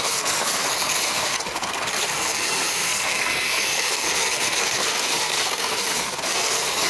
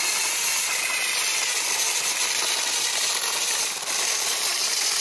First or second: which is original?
second